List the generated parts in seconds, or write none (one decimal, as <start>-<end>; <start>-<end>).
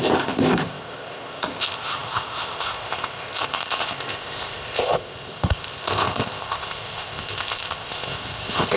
0.0-8.8